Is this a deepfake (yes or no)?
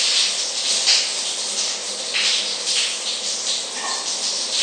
no